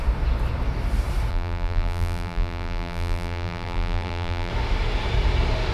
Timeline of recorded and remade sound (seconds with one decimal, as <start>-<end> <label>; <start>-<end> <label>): 0.0-1.3 recorded; 1.3-4.5 remade; 4.5-5.7 recorded